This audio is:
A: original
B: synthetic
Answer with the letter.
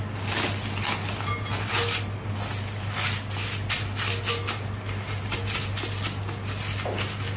A